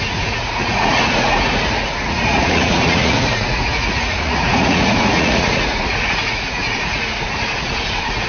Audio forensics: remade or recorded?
remade